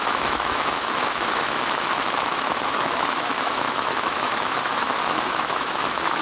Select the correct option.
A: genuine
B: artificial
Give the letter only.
B